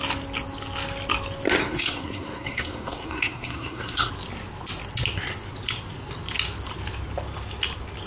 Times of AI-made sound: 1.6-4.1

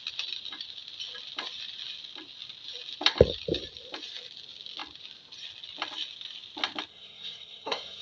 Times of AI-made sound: 6.9-8.0